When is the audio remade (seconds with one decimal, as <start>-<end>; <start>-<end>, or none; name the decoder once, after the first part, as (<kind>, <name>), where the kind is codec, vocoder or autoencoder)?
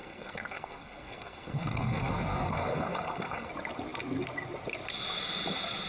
0.0-3.5 (codec, SNAC)